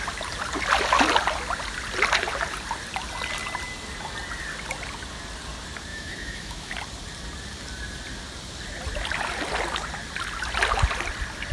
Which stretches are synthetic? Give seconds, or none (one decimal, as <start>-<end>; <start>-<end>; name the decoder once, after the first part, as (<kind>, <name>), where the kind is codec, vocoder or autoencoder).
5.9-6.7 (autoencoder, DAC-VAE)